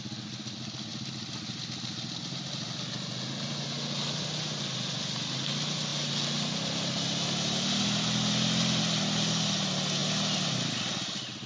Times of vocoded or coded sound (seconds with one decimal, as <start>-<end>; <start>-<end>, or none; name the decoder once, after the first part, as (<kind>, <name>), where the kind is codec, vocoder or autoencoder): none